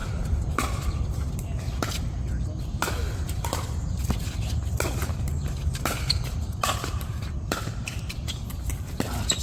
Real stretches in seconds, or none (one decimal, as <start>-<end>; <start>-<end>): 0.0-5.0; 8.7-9.4